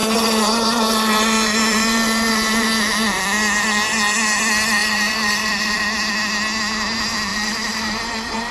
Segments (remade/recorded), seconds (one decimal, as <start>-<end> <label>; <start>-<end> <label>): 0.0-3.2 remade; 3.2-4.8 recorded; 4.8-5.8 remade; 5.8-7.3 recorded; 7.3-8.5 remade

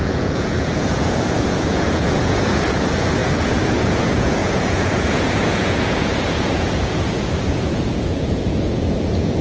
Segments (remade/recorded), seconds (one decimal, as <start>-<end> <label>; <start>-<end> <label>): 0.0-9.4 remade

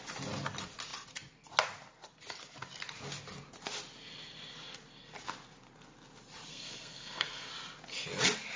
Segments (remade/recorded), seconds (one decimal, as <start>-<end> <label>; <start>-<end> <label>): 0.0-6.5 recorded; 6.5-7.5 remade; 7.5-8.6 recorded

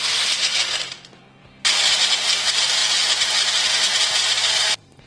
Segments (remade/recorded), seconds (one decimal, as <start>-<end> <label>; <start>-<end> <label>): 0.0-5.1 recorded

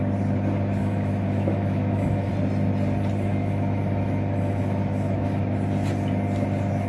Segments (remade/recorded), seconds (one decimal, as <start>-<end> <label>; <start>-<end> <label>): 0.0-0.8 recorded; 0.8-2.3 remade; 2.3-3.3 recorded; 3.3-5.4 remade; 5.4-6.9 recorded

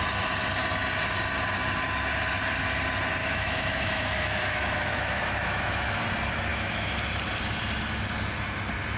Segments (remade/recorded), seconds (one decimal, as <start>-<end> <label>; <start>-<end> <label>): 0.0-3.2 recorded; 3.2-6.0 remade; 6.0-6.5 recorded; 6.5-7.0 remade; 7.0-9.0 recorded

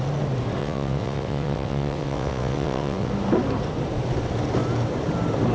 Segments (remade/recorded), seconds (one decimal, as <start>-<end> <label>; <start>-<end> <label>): 0.0-0.6 recorded; 0.6-3.1 remade; 3.1-5.5 recorded

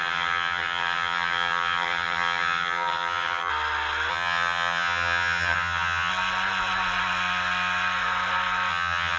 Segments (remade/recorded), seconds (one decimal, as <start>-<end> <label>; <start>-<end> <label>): 0.0-3.5 remade; 3.5-4.1 recorded; 4.1-6.1 remade; 6.1-8.7 recorded; 8.7-9.2 remade